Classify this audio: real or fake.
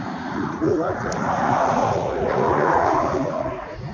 fake